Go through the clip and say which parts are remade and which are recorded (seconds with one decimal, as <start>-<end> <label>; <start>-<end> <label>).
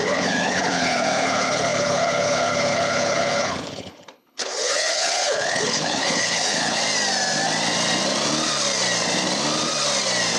0.0-6.8 remade; 6.8-10.4 recorded